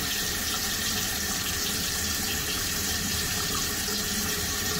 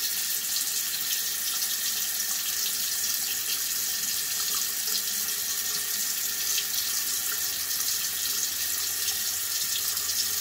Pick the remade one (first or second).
first